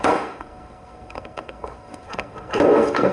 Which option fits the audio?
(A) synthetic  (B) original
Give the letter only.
A